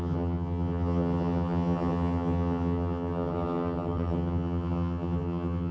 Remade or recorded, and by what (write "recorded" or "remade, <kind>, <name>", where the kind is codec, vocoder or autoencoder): remade, vocoder, HiFi-GAN